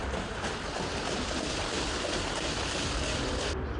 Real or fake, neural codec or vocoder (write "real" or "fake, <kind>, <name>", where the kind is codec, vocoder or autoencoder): real